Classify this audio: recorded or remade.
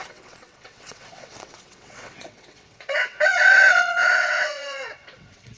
remade